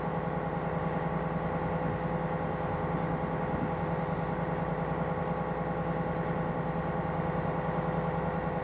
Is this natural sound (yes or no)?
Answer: yes